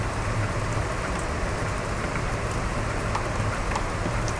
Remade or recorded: recorded